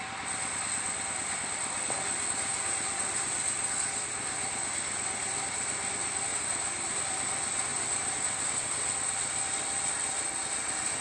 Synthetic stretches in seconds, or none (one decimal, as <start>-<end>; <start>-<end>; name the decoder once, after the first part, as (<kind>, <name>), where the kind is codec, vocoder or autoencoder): none